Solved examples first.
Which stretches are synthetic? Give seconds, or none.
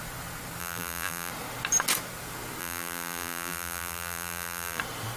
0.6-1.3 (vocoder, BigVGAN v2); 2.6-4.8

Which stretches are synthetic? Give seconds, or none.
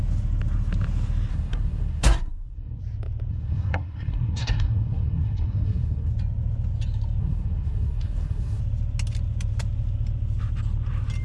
1.3-2.8 (codec, SNAC); 3.3-6.1; 7.2-8.6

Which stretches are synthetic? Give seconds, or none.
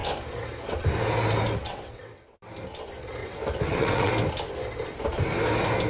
1.6-2.4 (vocoder, WaveNeXt); 3.2-4.1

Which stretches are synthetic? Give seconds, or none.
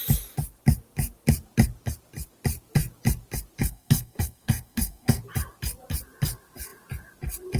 3.6-5.2 (codec, SNAC)